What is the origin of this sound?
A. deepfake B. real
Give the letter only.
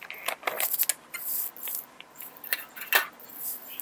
B